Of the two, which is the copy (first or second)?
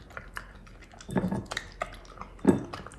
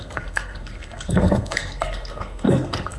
second